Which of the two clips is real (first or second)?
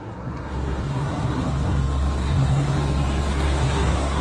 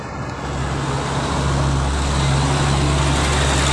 second